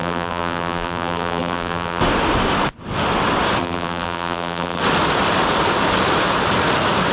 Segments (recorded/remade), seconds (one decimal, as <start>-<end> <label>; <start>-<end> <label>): 0.0-2.0 remade; 2.0-3.6 recorded; 3.6-4.8 remade; 4.8-7.1 recorded